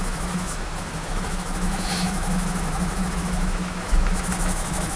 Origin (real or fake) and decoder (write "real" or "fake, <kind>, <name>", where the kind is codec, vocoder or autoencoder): fake, autoencoder, DAC-VAE